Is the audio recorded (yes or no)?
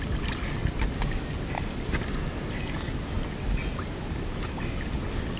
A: yes